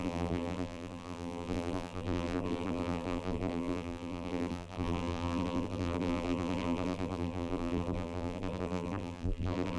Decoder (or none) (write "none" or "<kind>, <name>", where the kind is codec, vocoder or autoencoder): vocoder, BigVGAN v2